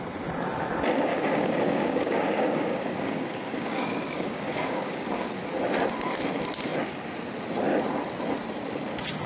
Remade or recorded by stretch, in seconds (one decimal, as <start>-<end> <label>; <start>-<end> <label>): 0.0-1.1 recorded; 1.1-5.3 remade; 5.3-9.3 recorded